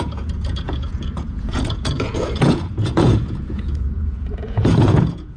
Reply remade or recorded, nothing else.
remade